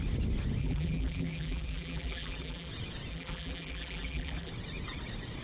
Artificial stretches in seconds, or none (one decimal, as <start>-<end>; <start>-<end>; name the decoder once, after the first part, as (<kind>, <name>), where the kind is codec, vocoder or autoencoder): 0.6-2.7 (vocoder, BigVGAN v2); 3.1-4.5